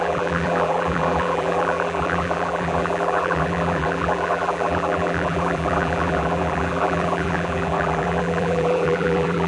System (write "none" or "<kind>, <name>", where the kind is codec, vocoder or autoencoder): vocoder, BigVGAN v2